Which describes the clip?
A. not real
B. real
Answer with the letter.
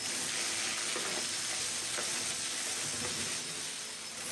B